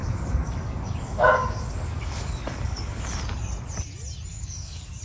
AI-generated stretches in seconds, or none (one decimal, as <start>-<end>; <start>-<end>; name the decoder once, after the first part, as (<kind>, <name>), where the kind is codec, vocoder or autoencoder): 0.0-3.0 (codec, DAC); 4.3-5.0